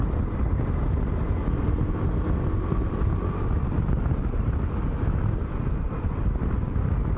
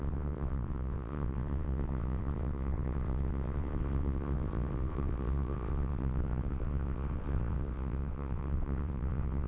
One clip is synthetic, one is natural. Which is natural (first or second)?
first